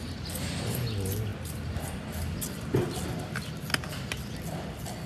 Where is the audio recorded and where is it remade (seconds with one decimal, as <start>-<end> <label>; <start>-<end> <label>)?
0.0-5.1 recorded